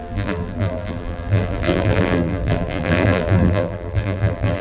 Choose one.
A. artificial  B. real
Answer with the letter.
A